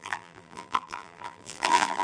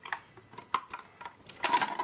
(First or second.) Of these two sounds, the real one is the second